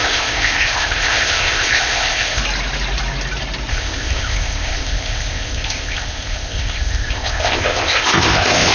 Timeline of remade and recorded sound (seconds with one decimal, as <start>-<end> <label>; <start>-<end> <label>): 0.0-2.4 remade; 2.4-3.7 recorded; 3.7-8.7 remade